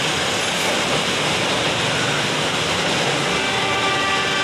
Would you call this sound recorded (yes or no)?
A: yes